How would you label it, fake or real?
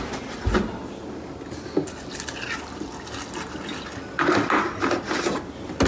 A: real